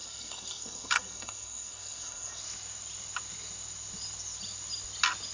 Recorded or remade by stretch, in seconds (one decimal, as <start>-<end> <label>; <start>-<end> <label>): 0.0-2.4 remade; 2.4-5.3 recorded

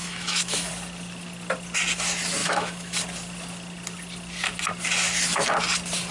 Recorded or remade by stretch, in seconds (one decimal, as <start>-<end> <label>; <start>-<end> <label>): 0.0-0.7 remade; 0.7-2.4 recorded; 2.4-3.0 remade; 3.0-6.1 recorded

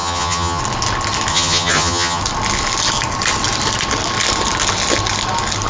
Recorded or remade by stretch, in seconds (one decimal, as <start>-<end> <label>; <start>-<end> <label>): 0.0-0.6 remade; 0.6-1.3 recorded; 1.3-2.2 remade; 2.2-5.7 recorded

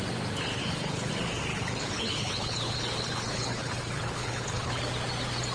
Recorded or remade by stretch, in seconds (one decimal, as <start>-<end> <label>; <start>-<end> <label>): 0.0-0.6 recorded; 0.6-1.1 remade; 1.1-1.5 recorded; 1.5-4.8 remade; 4.8-5.5 recorded

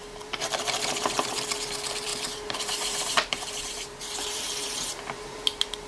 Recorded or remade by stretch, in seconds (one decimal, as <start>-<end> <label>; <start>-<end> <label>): 0.0-5.9 remade

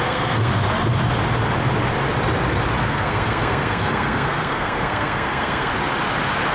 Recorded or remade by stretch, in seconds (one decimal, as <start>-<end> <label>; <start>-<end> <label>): 0.0-0.5 remade; 0.5-2.8 recorded; 2.8-5.7 remade; 5.7-6.5 recorded

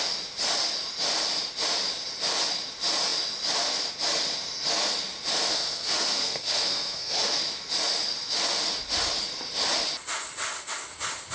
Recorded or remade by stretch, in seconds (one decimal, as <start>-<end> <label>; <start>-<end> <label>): 0.0-5.5 recorded; 5.5-7.4 remade; 7.4-11.3 recorded

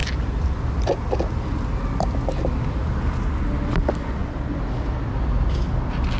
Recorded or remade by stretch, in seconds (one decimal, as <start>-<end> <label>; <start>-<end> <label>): 0.0-6.2 recorded